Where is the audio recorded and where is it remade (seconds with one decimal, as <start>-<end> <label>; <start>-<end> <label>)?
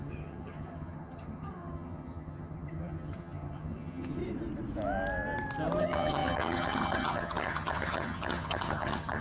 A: 0.0-4.2 remade; 4.2-5.8 recorded; 5.8-9.2 remade